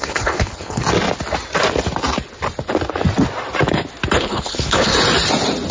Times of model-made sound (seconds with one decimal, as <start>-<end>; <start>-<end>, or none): 0.0-0.8; 4.2-4.9